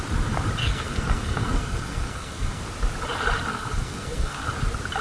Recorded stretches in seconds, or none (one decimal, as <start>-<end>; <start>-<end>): 0.0-0.6; 2.6-3.5; 4.4-5.0